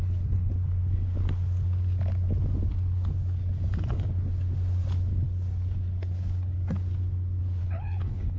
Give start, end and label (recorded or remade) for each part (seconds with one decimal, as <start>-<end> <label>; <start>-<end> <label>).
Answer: 0.0-0.5 remade; 0.5-7.6 recorded; 7.6-8.4 remade